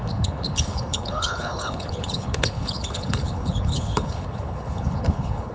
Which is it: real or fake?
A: fake